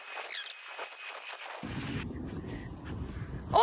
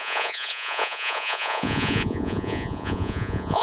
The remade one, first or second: second